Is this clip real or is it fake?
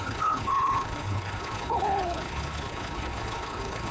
fake